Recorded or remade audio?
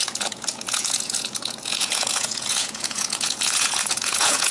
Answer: remade